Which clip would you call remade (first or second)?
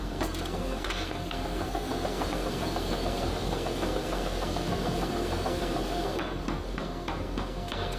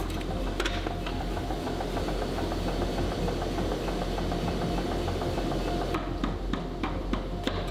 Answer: first